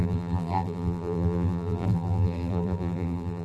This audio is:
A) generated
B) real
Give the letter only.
A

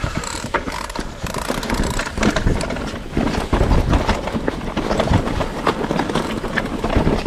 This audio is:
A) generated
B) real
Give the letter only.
A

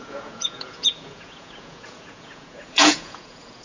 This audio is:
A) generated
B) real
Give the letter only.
A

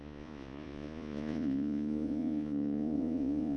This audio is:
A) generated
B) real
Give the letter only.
A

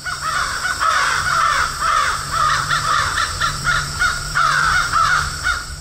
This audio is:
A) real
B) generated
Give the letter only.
B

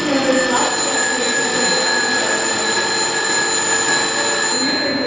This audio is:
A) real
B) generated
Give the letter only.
A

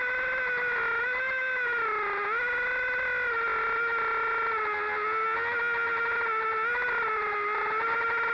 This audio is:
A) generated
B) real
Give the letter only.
B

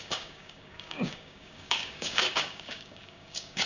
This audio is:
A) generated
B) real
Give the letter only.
A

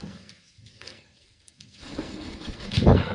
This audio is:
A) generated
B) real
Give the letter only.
A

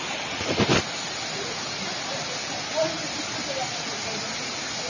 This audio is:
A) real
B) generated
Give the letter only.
A